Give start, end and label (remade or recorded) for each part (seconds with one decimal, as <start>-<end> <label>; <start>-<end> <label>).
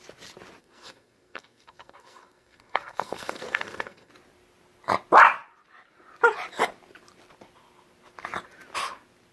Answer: 0.0-0.6 recorded; 0.6-4.1 remade; 4.1-9.3 recorded